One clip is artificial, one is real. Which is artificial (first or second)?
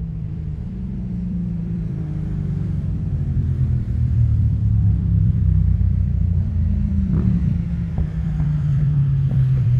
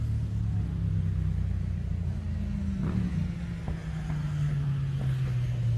first